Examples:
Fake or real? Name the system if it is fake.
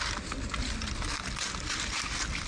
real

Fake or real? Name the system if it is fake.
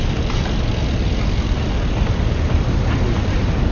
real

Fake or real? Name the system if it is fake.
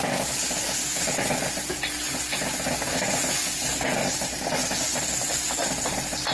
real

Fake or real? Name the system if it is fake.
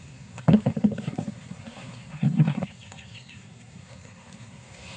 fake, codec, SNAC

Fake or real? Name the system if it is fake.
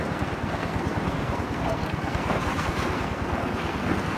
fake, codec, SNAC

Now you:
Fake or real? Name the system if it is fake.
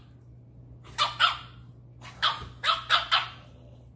real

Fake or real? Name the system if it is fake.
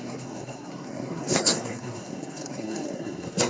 fake, codec, SNAC